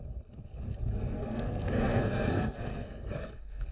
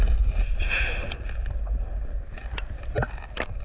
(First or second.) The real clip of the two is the second